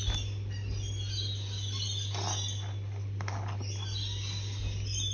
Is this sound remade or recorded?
recorded